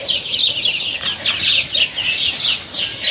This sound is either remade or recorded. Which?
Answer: recorded